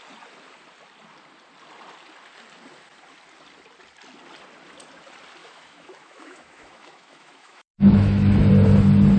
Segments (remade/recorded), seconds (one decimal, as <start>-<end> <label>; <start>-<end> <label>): 0.0-5.4 recorded; 5.4-8.5 remade; 8.5-9.2 recorded